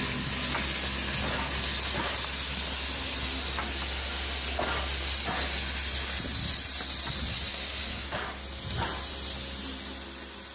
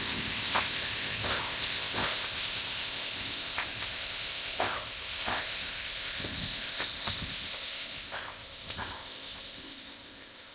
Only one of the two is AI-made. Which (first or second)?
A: second